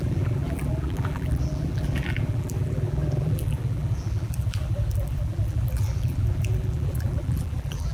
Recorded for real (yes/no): no